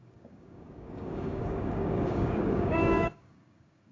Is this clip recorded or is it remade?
remade